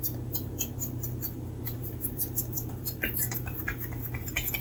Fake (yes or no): yes